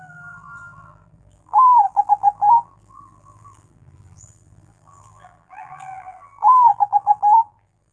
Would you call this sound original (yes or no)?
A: no